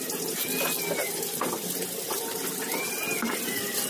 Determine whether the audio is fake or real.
real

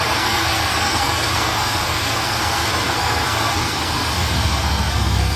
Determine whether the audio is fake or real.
fake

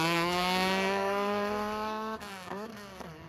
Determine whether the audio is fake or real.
fake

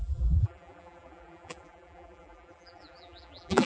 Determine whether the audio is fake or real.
fake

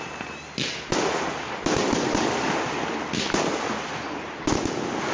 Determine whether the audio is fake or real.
real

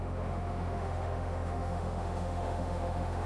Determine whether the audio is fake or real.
fake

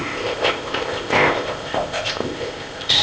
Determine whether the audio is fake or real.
fake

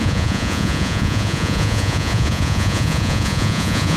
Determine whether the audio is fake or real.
fake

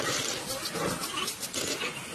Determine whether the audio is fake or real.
real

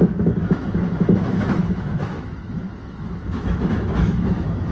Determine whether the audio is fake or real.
fake